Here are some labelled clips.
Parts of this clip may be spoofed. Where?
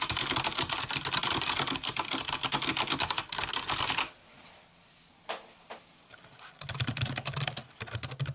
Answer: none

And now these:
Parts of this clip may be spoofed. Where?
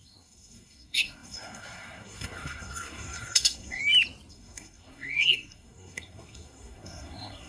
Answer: 0.0-3.8 (codec, SNAC); 4.3-7.5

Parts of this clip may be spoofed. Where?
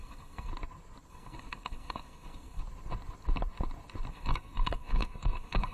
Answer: 0.0-0.5 (codec, SNAC); 1.1-2.6; 4.1-5.7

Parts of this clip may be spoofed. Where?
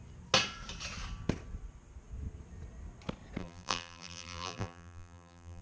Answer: 3.4-5.6 (vocoder, BigVGAN v2)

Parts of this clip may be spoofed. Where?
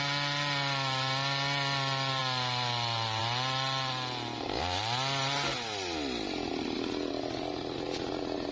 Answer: none